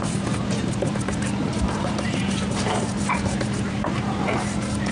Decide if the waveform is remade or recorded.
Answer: remade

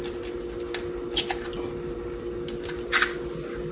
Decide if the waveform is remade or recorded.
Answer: recorded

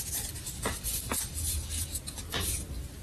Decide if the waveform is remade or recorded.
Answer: recorded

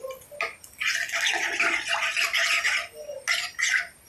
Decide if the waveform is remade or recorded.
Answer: recorded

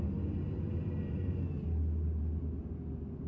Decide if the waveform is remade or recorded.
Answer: recorded